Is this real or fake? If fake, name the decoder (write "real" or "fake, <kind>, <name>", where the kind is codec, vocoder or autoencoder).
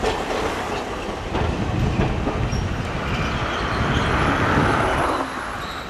real